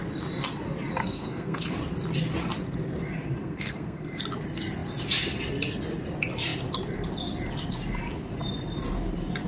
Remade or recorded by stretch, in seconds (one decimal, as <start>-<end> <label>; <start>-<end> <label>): 0.0-1.0 recorded; 1.0-1.6 remade; 1.6-3.4 recorded; 3.4-4.2 remade; 4.2-9.5 recorded